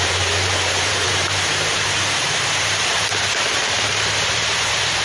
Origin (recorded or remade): remade